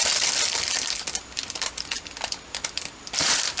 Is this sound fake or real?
fake